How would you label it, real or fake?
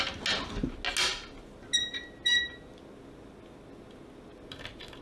real